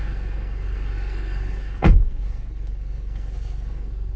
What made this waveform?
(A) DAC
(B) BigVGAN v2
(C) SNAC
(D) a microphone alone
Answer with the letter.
C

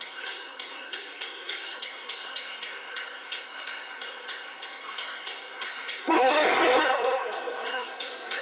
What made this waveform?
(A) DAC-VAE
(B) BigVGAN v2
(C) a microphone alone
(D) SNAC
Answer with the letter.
D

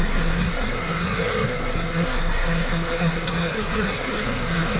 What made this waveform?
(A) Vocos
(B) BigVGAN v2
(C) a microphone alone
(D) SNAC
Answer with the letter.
D